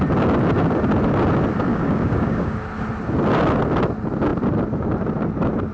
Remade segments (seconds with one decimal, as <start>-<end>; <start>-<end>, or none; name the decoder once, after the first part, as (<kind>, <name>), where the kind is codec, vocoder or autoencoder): 1.7-2.6 (codec, DAC)